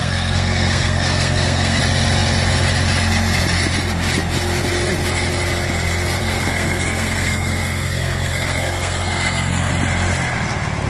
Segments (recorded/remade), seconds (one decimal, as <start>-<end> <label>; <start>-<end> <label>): 0.0-1.8 remade; 1.8-6.2 recorded; 6.2-9.7 remade; 9.7-10.9 recorded